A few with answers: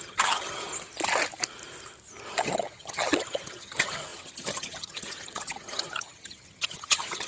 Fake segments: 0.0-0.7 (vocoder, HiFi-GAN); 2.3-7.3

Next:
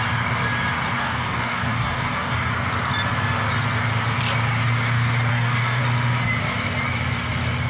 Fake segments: 1.0-2.5 (codec, DAC); 5.3-5.8

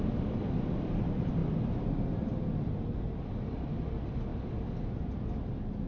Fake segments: none

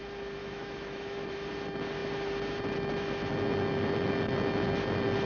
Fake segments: 0.4-1.3 (autoencoder, DAC-VAE)

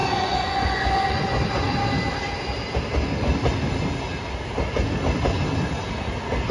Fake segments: 0.0-1.2 (vocoder, Vocos)

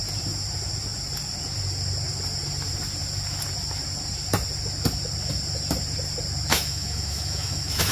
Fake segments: 6.5-7.9 (autoencoder, DAC-VAE)

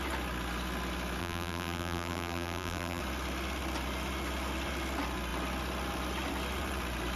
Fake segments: 1.2-3.0 (vocoder, BigVGAN v2)

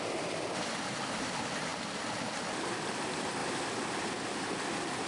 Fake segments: none